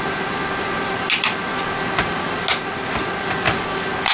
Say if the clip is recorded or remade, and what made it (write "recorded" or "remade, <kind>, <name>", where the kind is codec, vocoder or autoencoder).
recorded